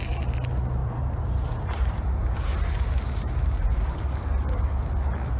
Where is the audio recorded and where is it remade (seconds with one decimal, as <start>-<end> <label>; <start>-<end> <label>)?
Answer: 0.0-0.8 recorded; 0.8-4.0 remade; 4.0-5.4 recorded